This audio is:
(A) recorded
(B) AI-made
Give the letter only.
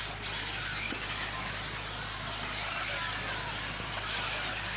A